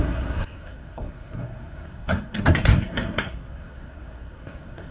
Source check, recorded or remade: remade